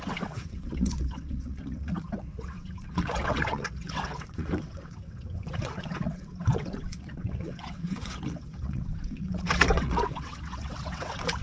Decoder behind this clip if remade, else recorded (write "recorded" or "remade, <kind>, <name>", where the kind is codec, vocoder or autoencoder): remade, vocoder, WaveNeXt